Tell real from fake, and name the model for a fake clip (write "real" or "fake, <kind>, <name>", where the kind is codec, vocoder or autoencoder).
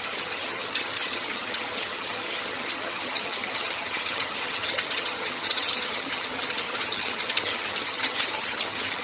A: fake, vocoder, HiFi-GAN